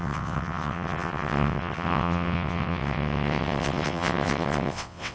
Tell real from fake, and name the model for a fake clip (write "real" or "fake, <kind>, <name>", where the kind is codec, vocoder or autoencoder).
fake, vocoder, WaveNeXt